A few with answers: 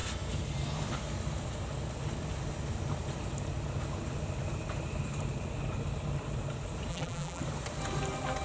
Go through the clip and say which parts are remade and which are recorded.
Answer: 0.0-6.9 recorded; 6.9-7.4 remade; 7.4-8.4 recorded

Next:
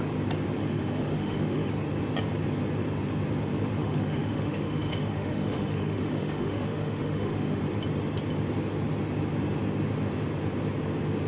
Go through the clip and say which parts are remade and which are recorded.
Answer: 0.0-0.6 recorded; 0.6-1.7 remade; 1.7-3.8 recorded; 3.8-7.6 remade; 7.6-11.3 recorded

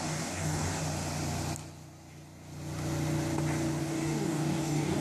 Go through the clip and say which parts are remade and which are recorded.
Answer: 0.0-0.8 remade; 0.8-3.8 recorded; 3.8-5.0 remade

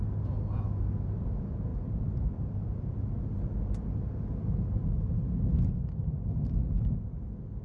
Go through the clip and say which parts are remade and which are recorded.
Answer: 0.0-1.7 recorded; 1.7-3.7 remade; 3.7-7.6 recorded

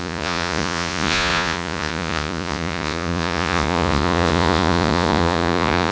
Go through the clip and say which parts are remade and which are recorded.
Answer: 0.0-5.9 remade

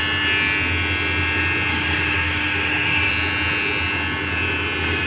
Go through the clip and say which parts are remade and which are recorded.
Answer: 0.0-1.7 recorded; 1.7-3.1 remade; 3.1-5.1 recorded

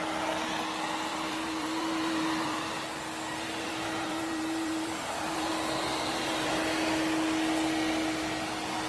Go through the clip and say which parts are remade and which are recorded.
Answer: 0.0-1.1 recorded; 1.1-2.8 remade; 2.8-3.3 recorded; 3.3-5.5 remade; 5.5-5.9 recorded; 5.9-6.5 remade; 6.5-8.9 recorded